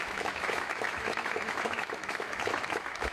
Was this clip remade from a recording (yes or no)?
yes